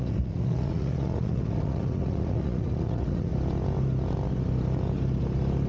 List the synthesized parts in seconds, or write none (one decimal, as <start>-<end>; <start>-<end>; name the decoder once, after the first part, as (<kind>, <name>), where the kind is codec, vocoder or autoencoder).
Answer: 0.0-3.3 (vocoder, Vocos)